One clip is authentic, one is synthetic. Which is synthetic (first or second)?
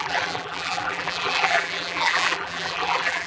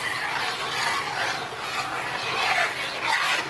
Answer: first